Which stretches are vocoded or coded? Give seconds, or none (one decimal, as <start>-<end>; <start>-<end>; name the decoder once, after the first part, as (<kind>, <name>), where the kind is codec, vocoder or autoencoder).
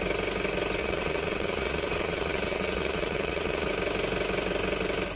0.8-3.7 (vocoder, Vocos)